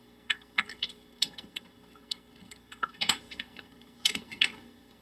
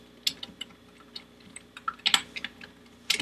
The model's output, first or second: first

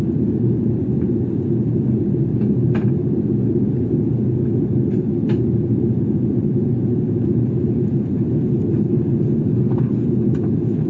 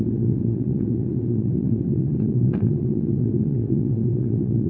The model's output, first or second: second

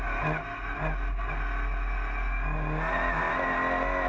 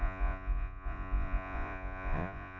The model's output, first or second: second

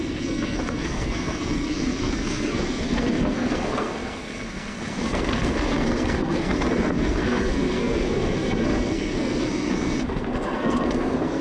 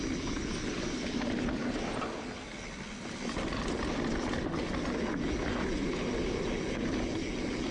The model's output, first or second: first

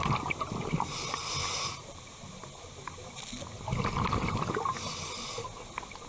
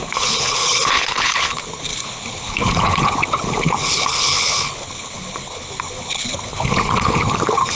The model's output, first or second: second